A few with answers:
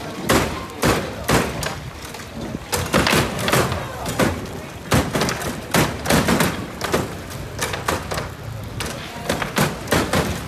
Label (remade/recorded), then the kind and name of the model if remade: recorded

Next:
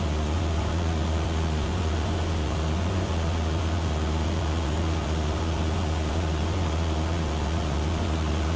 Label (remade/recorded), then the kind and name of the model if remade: remade, vocoder, Vocos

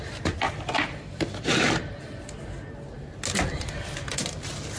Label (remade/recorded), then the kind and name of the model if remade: recorded